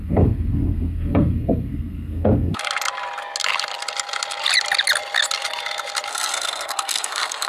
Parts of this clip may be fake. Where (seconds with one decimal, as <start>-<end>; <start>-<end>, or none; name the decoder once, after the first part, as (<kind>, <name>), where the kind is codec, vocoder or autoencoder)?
0.0-2.6 (codec, SNAC); 6.1-7.5